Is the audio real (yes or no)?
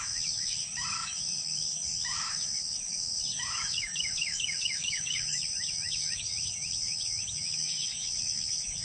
no